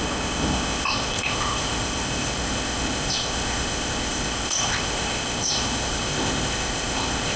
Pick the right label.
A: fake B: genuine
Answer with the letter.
A